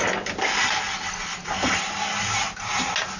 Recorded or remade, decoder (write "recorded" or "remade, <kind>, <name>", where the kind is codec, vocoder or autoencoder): recorded